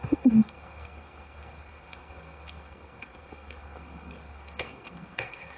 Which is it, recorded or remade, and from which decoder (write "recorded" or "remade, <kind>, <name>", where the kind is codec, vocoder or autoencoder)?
remade, codec, SNAC